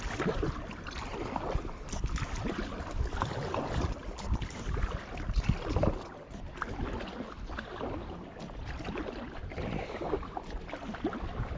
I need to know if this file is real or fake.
real